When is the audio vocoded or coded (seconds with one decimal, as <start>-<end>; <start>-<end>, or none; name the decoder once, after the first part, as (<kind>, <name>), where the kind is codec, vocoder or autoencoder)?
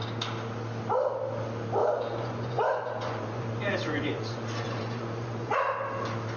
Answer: 1.8-5.6 (vocoder, Vocos)